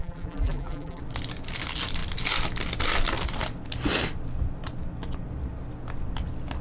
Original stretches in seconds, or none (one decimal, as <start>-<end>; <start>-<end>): 1.0-6.6